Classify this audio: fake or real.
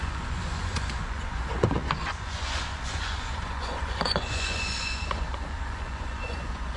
fake